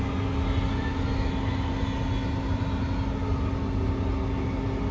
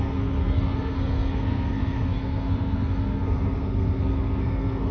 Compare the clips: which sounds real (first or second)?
first